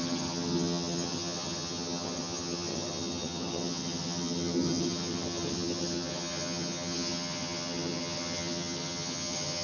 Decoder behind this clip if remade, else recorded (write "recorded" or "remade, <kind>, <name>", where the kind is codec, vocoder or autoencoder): remade, vocoder, HiFi-GAN